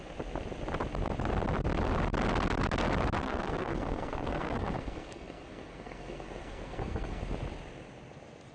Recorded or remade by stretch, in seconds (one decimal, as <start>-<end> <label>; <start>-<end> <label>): 0.0-3.2 recorded; 3.2-7.2 remade; 7.2-8.5 recorded